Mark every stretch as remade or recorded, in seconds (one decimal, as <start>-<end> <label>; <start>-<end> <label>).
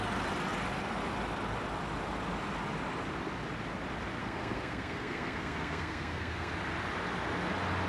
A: 0.0-4.2 recorded; 4.2-6.5 remade; 6.5-7.9 recorded